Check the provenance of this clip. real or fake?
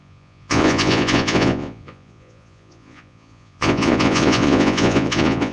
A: fake